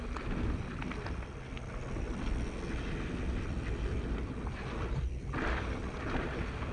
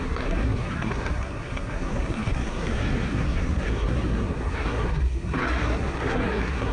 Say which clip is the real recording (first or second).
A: first